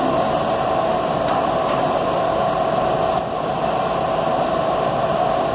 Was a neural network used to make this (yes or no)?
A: no